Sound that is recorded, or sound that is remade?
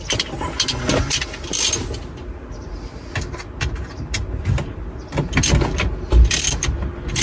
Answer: recorded